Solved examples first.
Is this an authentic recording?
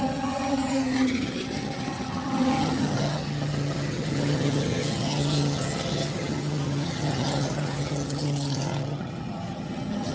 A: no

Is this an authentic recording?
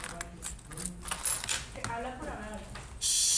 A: yes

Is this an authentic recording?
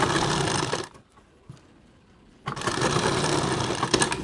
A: yes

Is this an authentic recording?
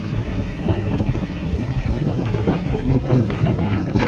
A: no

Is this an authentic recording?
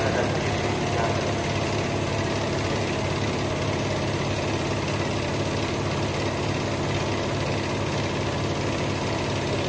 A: yes